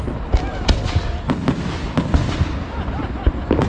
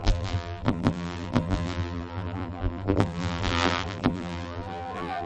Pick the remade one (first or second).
second